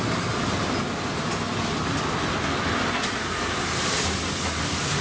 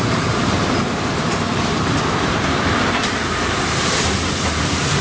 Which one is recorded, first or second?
first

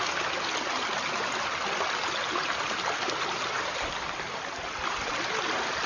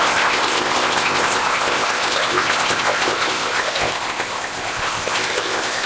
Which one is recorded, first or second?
first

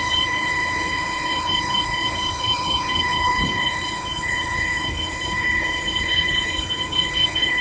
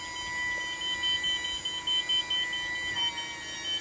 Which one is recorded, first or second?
second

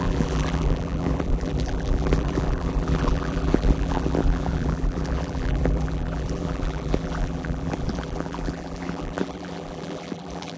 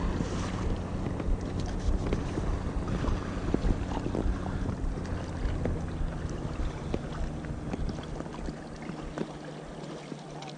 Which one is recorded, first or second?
second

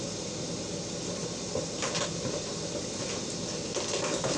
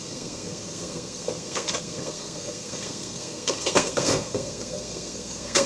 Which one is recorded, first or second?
first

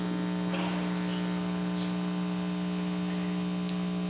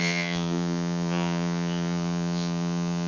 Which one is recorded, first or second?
first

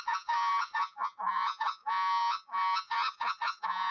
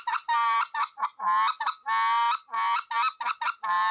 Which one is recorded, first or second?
second